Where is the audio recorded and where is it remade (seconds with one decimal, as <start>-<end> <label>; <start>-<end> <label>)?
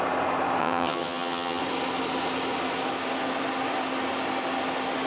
0.0-0.6 recorded; 0.6-1.6 remade; 1.6-5.1 recorded